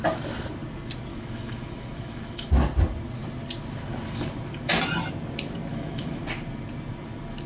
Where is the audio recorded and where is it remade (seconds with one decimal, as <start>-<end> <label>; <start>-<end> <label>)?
0.0-1.1 recorded; 1.1-2.5 remade; 2.5-5.7 recorded; 5.7-6.2 remade; 6.2-7.5 recorded